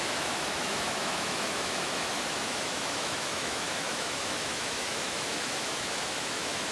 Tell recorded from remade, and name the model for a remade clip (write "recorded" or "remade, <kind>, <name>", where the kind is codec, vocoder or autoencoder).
remade, autoencoder, DAC-VAE